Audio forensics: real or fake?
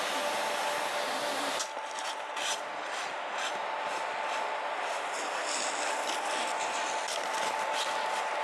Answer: real